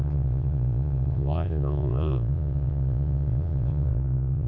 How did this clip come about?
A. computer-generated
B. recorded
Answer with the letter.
A